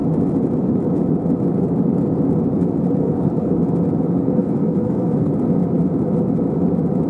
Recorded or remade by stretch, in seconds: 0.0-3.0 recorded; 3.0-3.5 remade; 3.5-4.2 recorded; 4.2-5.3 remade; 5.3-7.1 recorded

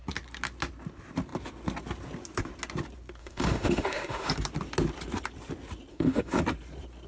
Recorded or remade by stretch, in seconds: 0.0-3.2 recorded; 3.2-4.3 remade; 4.3-5.9 recorded; 5.9-6.4 remade; 6.4-7.1 recorded